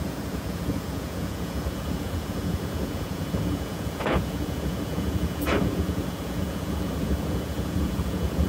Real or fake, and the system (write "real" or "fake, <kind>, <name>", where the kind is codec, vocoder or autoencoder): fake, vocoder, Vocos